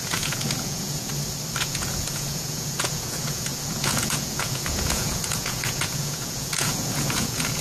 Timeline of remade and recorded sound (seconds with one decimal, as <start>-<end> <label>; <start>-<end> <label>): 0.0-1.1 remade; 1.1-1.6 recorded; 1.6-7.6 remade